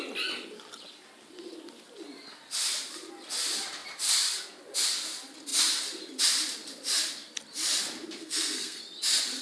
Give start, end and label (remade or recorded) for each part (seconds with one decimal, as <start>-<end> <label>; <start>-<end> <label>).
0.0-8.2 recorded; 8.2-8.8 remade; 8.8-9.4 recorded